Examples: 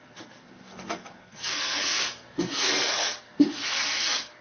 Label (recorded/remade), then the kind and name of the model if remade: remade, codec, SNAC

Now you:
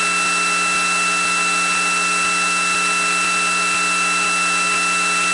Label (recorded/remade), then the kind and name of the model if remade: recorded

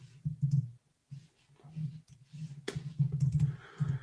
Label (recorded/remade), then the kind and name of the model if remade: recorded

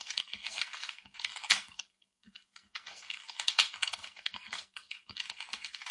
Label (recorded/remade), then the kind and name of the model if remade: remade, codec, SNAC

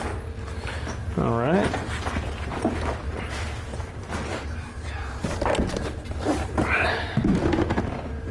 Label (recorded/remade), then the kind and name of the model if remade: recorded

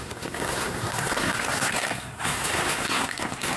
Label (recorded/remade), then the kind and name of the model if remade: remade, codec, SNAC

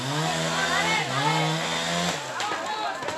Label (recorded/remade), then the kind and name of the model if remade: recorded